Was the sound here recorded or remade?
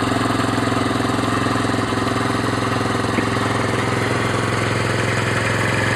remade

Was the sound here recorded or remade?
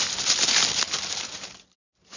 recorded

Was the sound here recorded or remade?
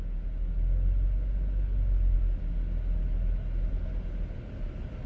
recorded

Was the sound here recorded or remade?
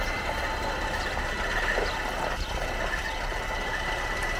recorded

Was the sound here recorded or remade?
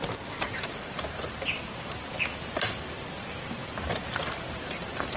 remade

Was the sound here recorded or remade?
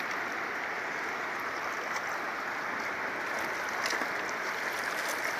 recorded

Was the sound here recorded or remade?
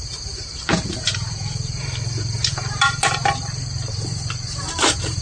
remade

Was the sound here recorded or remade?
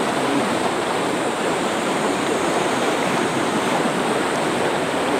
remade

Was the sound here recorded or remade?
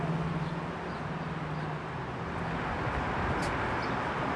recorded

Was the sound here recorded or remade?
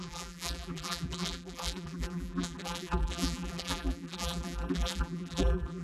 remade